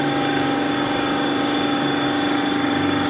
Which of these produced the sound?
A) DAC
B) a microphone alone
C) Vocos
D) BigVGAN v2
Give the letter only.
A